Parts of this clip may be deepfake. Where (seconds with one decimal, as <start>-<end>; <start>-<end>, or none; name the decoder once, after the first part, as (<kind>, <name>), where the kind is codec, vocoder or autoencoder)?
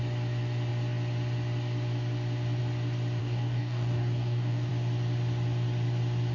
3.2-4.7 (codec, DAC)